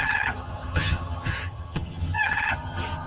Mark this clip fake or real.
fake